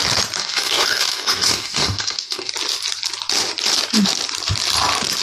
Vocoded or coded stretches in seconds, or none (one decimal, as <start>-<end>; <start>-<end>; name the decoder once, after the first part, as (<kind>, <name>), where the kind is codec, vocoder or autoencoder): 0.4-2.5 (codec, DAC)